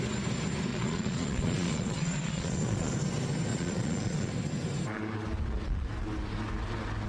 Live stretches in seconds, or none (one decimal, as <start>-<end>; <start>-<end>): 0.0-0.7; 2.9-3.5; 4.3-7.1